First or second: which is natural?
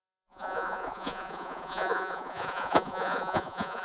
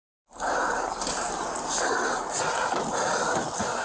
second